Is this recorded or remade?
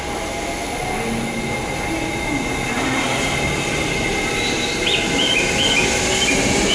recorded